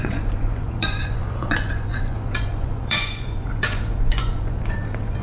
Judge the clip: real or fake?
fake